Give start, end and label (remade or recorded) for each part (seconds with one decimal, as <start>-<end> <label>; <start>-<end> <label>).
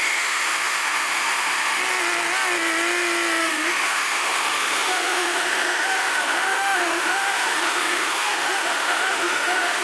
0.0-1.8 remade; 1.8-3.4 recorded; 3.4-9.8 remade